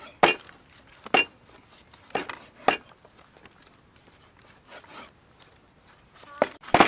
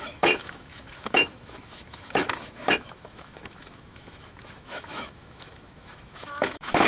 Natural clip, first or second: first